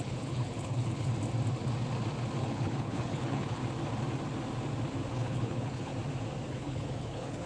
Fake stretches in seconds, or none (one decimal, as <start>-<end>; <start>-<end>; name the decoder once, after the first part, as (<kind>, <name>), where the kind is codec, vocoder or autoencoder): 0.0-1.1 (codec, HILCodec); 2.4-3.6; 5.1-5.9; 6.5-7.5